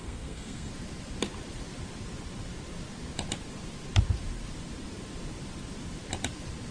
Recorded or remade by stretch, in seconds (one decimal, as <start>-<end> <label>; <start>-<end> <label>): 0.0-0.7 remade; 0.7-6.7 recorded